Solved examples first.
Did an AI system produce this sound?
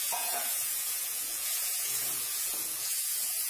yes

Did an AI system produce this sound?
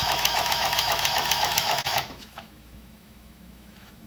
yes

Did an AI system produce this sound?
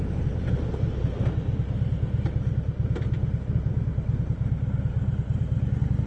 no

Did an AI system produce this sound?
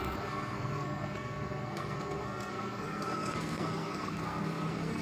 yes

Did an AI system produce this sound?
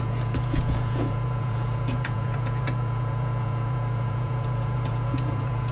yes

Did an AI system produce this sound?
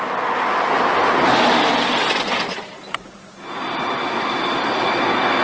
no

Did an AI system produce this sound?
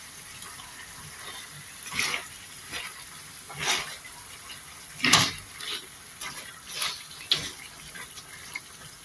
no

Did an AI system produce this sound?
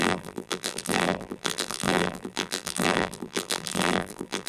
yes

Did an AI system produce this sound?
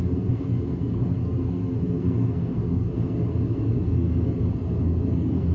yes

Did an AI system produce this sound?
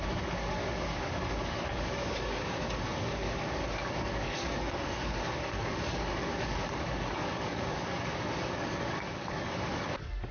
yes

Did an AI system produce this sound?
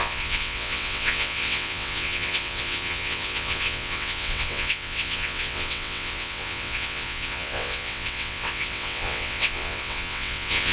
yes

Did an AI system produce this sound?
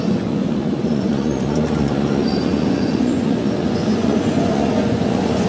yes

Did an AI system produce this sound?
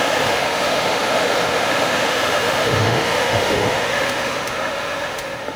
yes